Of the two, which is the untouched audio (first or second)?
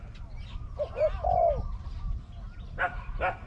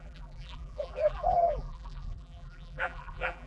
first